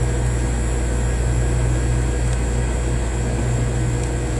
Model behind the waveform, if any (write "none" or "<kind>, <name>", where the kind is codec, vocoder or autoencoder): none